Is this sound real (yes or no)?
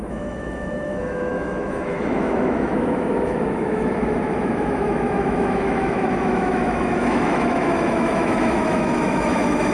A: no